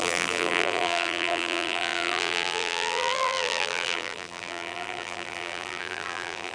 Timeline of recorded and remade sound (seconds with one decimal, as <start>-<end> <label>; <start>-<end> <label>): 0.0-6.5 remade